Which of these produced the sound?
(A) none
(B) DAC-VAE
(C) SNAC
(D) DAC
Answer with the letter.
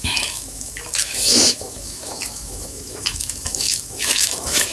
B